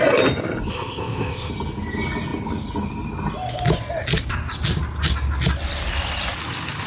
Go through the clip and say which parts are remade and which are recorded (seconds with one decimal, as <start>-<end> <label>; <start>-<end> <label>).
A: 0.0-0.7 recorded; 0.7-1.5 remade; 1.5-6.9 recorded